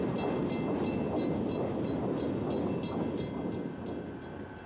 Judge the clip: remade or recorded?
recorded